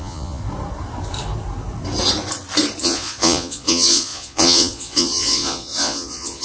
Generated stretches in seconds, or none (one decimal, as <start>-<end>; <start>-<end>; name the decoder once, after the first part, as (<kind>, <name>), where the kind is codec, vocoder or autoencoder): 0.0-0.4 (vocoder, Vocos); 2.8-6.4